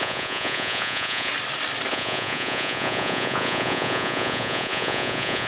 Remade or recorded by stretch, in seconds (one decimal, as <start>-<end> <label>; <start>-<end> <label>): 0.0-1.3 remade; 1.3-1.9 recorded; 1.9-5.5 remade

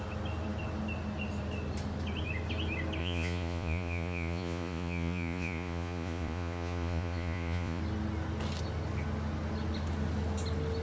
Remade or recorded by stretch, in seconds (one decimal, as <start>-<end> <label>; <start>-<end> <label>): 0.0-3.0 recorded; 3.0-7.8 remade; 7.8-10.8 recorded

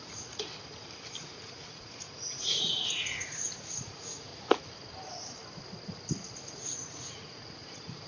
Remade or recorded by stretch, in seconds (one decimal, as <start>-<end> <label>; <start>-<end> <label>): 0.0-0.5 remade; 0.5-1.2 recorded; 1.2-4.3 remade; 4.3-6.5 recorded; 6.5-8.1 remade

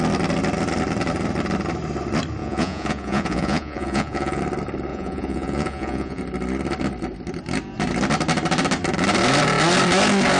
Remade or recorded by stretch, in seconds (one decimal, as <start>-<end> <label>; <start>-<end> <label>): 0.0-2.4 recorded; 2.4-4.4 remade; 4.4-4.9 recorded; 4.9-6.2 remade; 6.2-10.4 recorded

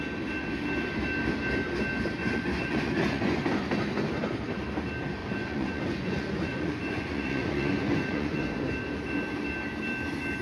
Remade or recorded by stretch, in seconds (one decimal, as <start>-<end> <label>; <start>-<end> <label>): 0.0-2.2 recorded; 2.2-3.4 remade; 3.4-5.2 recorded; 5.2-8.4 remade; 8.4-10.4 recorded